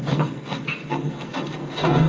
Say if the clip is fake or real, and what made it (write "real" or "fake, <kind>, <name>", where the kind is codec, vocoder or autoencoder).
fake, codec, SNAC